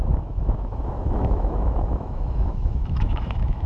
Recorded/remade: remade